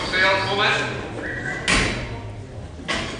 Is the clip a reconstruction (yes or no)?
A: no